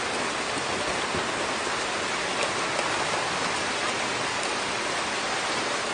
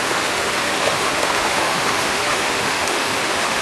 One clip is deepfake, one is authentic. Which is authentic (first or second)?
first